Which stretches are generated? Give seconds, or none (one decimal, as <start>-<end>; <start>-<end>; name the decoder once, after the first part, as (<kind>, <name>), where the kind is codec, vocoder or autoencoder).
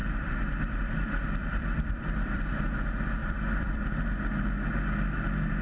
0.0-0.6 (vocoder, BigVGAN v2); 1.4-2.4; 3.2-3.8